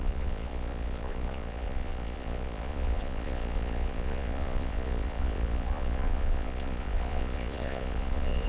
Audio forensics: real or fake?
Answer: fake